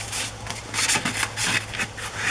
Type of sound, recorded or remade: recorded